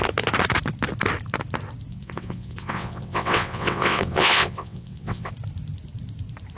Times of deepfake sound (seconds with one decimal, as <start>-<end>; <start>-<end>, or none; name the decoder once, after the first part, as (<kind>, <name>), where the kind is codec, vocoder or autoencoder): 1.9-5.3 (vocoder, WaveNeXt)